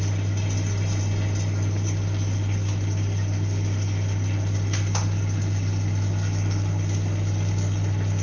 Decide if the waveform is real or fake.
real